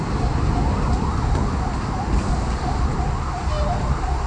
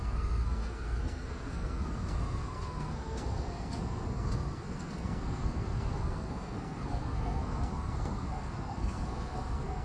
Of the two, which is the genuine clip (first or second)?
first